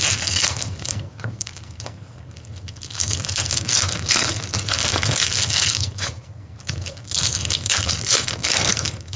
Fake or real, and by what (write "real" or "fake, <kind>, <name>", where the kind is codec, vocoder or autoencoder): fake, codec, SNAC